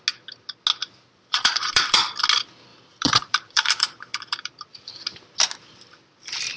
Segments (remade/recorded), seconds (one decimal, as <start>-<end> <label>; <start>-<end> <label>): 0.0-0.8 recorded; 0.8-2.2 remade; 2.2-2.7 recorded; 2.7-4.9 remade; 4.9-6.6 recorded